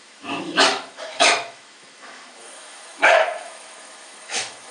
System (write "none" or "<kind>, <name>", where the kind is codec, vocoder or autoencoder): autoencoder, DAC-VAE